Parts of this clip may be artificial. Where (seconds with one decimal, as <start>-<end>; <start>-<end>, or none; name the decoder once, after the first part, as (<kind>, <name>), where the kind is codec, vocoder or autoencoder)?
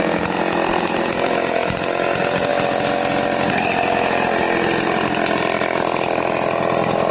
0.0-2.5 (vocoder, Vocos)